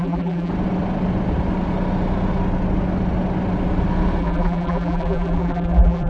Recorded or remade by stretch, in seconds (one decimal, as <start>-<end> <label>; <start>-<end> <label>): 0.0-0.5 remade; 0.5-4.2 recorded; 4.2-6.1 remade